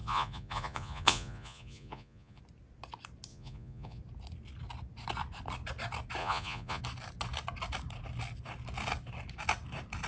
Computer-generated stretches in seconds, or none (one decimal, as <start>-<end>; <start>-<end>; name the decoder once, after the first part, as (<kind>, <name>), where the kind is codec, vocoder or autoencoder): 0.0-2.4 (vocoder, Vocos); 3.3-4.0; 6.2-6.8